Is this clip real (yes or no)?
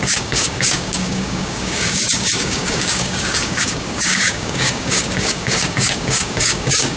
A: no